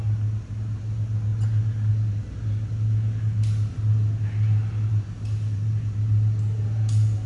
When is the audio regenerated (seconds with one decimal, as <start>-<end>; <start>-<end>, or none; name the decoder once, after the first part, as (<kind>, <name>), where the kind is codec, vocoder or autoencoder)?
none